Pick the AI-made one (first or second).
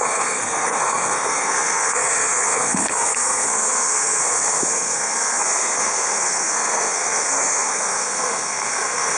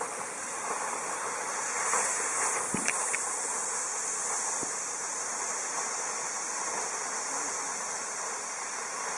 first